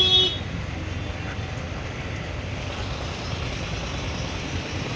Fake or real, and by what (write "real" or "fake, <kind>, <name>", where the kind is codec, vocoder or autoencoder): real